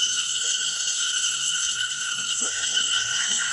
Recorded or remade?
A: remade